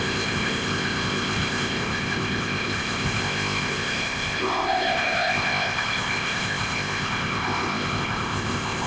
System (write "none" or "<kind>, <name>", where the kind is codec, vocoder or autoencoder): codec, ZipCodec